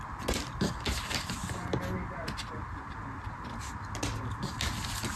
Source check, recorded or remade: recorded